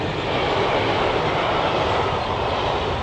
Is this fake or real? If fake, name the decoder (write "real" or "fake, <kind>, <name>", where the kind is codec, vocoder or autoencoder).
real